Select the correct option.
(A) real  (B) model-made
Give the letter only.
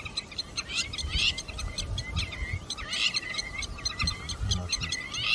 A